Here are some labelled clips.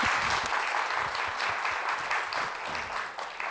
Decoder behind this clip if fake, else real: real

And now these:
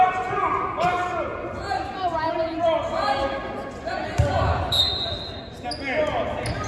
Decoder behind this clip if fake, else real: real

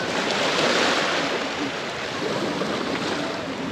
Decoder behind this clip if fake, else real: fake, vocoder, BigVGAN v2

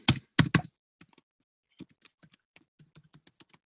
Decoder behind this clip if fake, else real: real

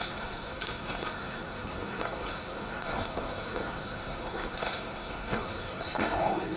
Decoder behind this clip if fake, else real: fake, codec, SNAC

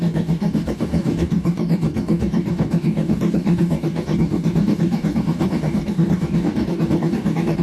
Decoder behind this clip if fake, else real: fake, codec, DAC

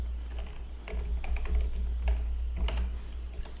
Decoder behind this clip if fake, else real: real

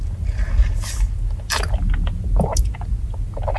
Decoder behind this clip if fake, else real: real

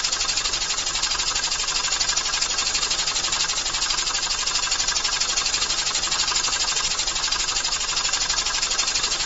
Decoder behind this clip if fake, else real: real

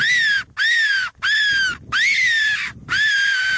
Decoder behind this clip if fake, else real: real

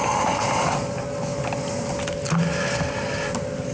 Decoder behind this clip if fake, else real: real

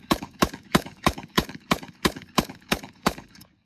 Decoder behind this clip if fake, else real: fake, codec, DAC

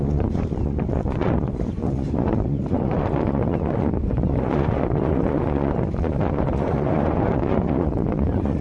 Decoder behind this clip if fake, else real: fake, vocoder, Vocos